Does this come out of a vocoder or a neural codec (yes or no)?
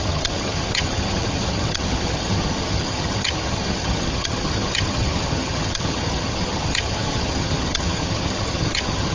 yes